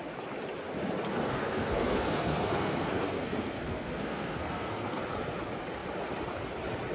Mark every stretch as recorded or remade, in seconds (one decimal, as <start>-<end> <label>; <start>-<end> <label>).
0.0-1.1 recorded; 1.1-5.0 remade; 5.0-6.9 recorded

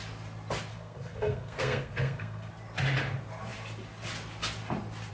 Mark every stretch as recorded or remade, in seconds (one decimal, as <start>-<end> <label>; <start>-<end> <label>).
0.0-0.7 recorded; 0.7-2.5 remade; 2.5-5.1 recorded

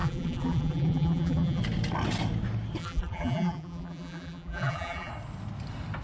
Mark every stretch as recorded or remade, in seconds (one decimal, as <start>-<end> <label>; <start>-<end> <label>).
0.0-1.6 remade; 1.6-2.8 recorded; 2.8-5.1 remade; 5.1-6.0 recorded